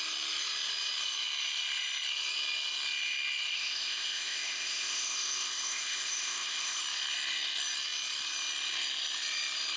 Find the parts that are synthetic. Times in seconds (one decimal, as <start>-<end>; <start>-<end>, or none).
3.5-6.8